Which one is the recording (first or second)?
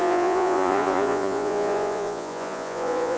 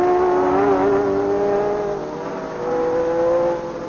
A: second